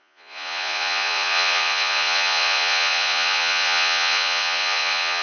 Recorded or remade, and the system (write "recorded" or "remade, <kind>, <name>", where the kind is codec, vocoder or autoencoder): remade, vocoder, Vocos